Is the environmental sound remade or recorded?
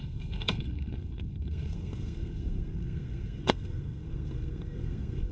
remade